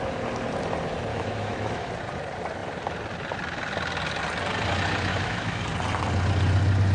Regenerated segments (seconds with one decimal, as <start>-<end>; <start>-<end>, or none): 1.1-1.9; 5.1-5.6